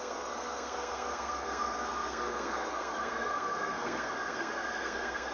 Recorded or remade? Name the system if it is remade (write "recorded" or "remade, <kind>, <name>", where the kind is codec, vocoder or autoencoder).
remade, codec, SNAC